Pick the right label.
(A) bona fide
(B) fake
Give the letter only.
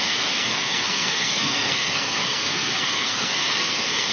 B